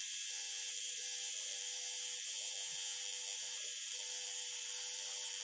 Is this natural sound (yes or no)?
yes